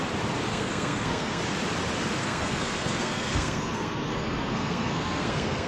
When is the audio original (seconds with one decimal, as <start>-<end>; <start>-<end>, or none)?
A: 0.0-0.5; 1.4-2.2